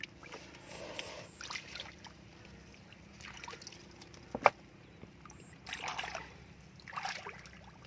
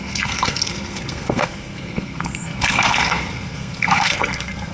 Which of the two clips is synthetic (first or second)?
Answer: second